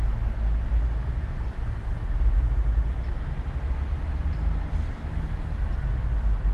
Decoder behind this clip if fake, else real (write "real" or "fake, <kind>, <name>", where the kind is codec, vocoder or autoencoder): real